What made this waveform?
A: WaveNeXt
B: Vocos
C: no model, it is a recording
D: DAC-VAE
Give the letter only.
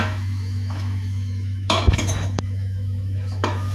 D